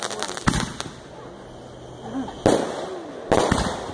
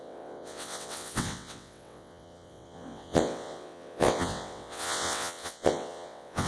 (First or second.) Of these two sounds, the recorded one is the first